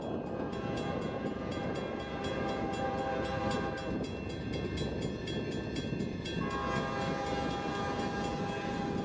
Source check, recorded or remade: recorded